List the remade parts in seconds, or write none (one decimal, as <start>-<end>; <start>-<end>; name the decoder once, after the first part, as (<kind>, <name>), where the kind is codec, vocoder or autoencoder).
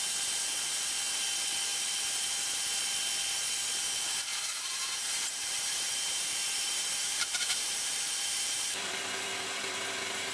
1.7-2.8 (vocoder, BigVGAN v2); 4.3-8.9